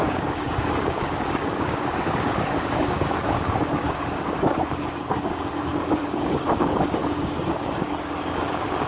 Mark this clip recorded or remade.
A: remade